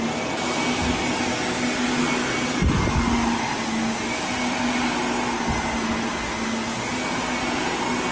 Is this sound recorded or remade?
recorded